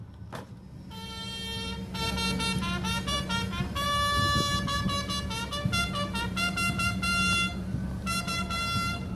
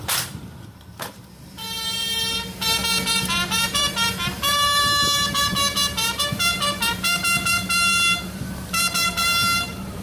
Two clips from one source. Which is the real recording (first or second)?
first